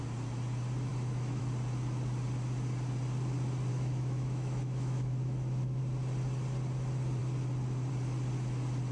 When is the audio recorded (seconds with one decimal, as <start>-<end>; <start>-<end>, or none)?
0.0-0.9; 1.4-3.7; 5.8-8.9